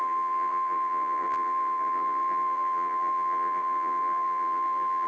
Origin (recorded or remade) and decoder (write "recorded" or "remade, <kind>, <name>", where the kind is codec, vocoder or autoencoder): remade, vocoder, BigVGAN v2